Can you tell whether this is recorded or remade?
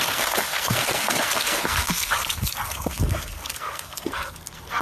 remade